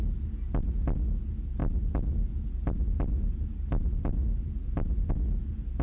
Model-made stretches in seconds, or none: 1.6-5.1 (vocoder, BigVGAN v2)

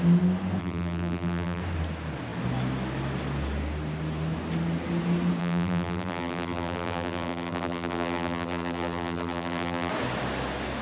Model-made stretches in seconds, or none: 0.6-1.6 (vocoder, BigVGAN v2); 5.4-9.9

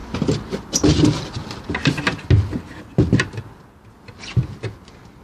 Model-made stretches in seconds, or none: none

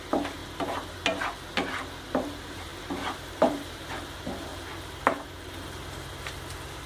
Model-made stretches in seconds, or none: 0.0-0.4 (vocoder, BigVGAN v2); 1.4-4.5

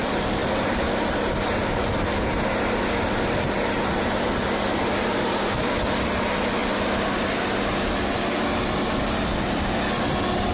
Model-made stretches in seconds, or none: none